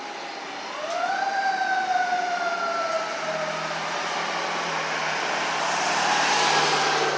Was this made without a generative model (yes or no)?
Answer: yes